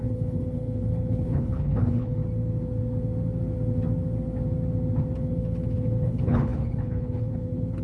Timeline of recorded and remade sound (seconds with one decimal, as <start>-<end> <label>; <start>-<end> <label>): 0.0-2.2 remade; 2.2-5.2 recorded; 5.2-7.8 remade